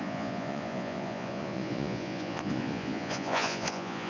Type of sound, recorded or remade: remade